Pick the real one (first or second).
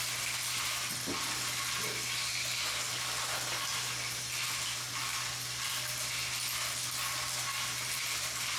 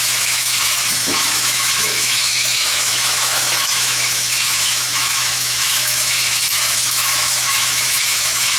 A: first